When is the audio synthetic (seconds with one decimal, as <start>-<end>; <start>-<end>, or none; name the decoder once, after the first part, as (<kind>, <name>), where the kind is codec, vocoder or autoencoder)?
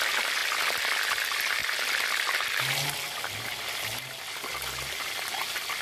none